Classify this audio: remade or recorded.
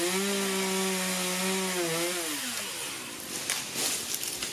recorded